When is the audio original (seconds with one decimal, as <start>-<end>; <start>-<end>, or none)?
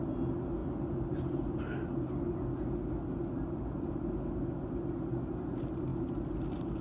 0.0-6.8